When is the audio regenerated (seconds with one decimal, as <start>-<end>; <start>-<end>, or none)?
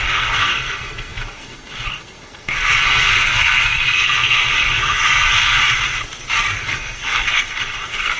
0.0-5.6; 6.6-8.2